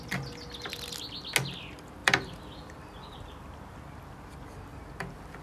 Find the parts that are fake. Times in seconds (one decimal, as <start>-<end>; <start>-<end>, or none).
2.0-3.8; 4.7-5.4